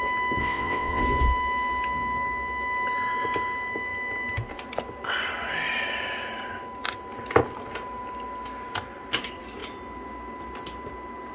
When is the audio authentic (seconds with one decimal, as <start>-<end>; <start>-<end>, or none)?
0.0-0.4; 1.0-11.3